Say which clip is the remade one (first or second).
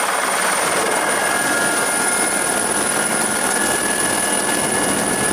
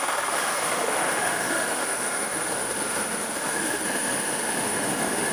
second